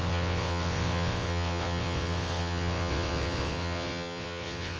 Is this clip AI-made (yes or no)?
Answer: yes